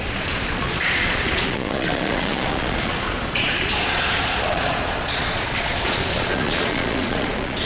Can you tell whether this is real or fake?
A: fake